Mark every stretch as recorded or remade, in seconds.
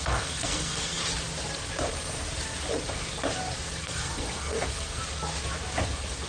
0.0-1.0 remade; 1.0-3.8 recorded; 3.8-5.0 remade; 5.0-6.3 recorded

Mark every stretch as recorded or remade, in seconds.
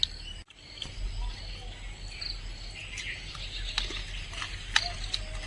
0.0-5.5 recorded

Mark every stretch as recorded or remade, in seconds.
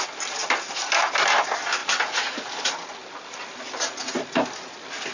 0.0-5.1 recorded